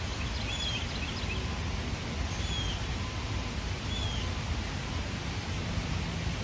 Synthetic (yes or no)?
no